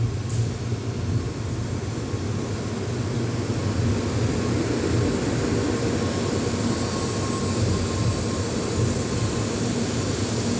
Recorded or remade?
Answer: recorded